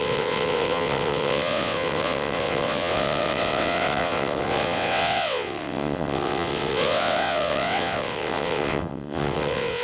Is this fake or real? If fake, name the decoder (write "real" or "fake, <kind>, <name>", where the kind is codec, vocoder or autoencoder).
fake, vocoder, WaveNeXt